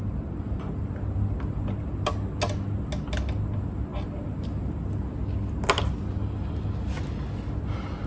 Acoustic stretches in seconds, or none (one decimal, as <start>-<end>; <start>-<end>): 0.0-8.1